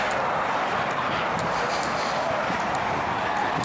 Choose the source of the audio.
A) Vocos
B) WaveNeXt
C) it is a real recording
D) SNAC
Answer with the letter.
C